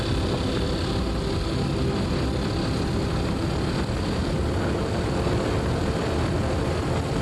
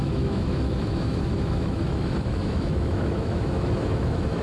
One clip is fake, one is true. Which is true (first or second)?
first